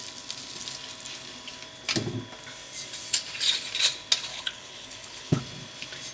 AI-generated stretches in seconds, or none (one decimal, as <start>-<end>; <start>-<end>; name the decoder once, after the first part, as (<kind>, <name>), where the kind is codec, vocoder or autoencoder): 4.3-5.4 (codec, HILCodec)